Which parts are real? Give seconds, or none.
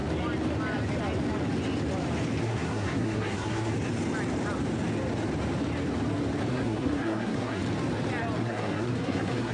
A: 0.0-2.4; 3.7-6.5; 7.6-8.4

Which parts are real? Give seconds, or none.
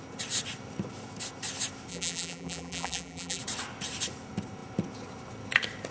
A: 0.0-1.9; 3.4-5.9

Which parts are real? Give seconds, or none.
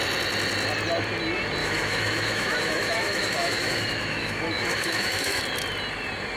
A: 0.0-1.6; 5.4-6.4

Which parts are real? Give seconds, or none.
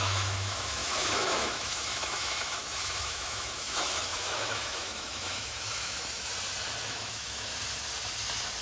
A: 6.3-6.9; 7.5-8.6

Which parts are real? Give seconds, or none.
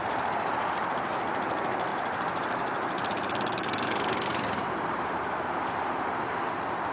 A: 0.5-1.9; 5.1-6.9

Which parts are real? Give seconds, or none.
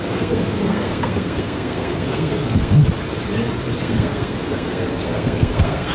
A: 2.8-3.8